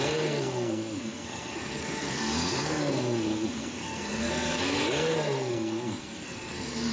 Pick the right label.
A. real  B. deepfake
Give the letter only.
B